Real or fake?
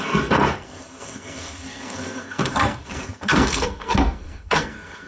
fake